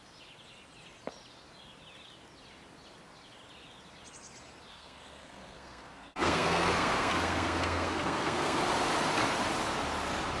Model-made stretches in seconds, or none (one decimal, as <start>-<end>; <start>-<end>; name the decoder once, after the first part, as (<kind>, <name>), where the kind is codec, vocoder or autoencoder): 4.7-8.6 (codec, SNAC)

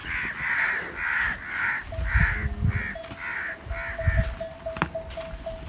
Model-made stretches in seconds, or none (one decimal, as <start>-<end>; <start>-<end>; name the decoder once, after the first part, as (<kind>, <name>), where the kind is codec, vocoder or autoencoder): none

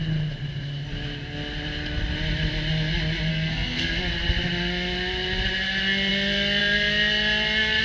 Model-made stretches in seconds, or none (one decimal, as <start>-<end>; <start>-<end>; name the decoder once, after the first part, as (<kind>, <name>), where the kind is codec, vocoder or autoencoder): 3.3-4.0 (codec, SNAC)

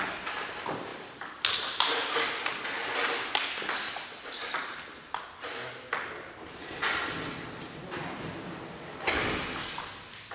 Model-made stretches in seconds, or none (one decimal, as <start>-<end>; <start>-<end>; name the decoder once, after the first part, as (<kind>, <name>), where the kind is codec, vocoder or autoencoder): none